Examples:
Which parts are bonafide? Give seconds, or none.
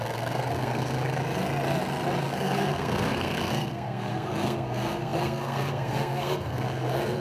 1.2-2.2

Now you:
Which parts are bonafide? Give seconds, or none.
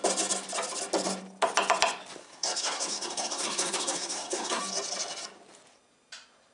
0.0-2.2; 4.6-6.5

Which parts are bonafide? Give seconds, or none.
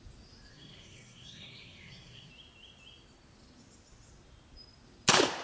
0.0-0.5; 2.3-5.4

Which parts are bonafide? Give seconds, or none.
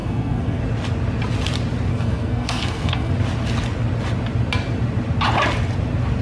0.6-1.9; 3.1-6.2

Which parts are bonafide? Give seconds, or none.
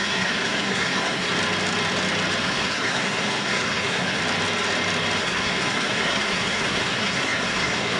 1.3-2.4; 4.2-5.2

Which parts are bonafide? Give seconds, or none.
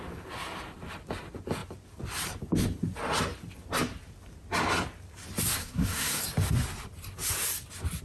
0.0-5.6; 6.2-8.0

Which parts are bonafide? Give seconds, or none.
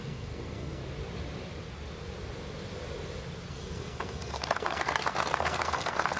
0.8-3.5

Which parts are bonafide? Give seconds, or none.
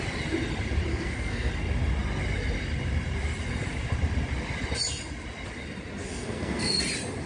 0.0-0.9; 1.5-6.0; 6.8-7.3